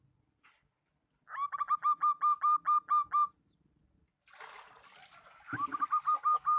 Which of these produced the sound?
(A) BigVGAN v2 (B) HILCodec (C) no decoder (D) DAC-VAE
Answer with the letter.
C